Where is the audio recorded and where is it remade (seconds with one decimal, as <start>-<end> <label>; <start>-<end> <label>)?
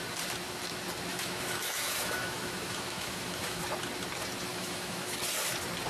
0.0-1.1 recorded; 1.1-3.6 remade; 3.6-4.5 recorded; 4.5-5.2 remade; 5.2-5.9 recorded